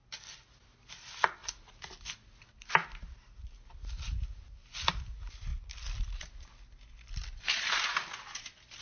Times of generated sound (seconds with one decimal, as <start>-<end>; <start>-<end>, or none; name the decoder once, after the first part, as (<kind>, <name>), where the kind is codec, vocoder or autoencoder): none